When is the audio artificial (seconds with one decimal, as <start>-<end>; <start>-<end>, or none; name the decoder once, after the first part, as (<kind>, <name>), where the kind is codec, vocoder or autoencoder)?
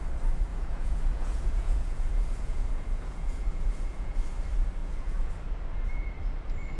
0.5-4.2 (vocoder, Vocos); 4.8-5.3